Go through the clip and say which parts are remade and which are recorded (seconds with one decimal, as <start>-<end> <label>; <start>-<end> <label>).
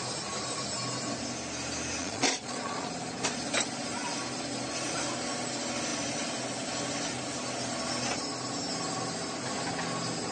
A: 0.0-2.0 recorded; 2.0-2.9 remade; 2.9-10.3 recorded